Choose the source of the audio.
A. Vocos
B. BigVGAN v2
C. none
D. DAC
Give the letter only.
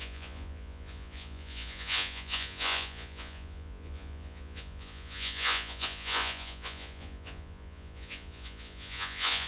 A